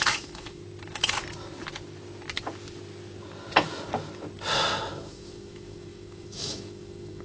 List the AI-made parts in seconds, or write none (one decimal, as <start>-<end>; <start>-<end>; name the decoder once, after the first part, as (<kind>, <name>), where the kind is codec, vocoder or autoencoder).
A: 0.0-0.6 (autoencoder, DAC-VAE); 4.9-7.2